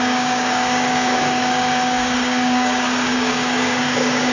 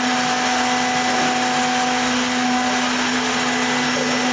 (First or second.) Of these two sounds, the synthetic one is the first